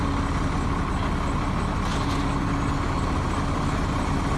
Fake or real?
real